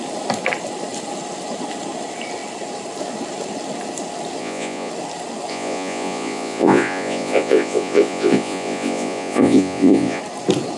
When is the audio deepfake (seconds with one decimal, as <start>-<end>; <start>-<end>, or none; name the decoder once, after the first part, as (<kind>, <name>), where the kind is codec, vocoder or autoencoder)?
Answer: 4.4-4.9 (vocoder, Vocos); 5.5-10.2